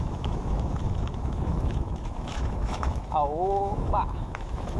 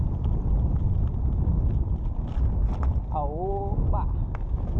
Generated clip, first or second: first